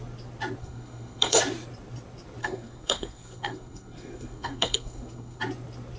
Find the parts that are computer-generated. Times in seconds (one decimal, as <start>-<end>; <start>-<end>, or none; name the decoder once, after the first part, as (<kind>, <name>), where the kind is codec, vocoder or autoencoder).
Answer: 0.6-1.4 (codec, SNAC); 2.4-5.4